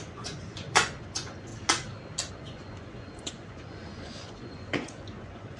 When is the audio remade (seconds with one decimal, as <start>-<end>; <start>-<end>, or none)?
0.0-1.5; 2.3-5.6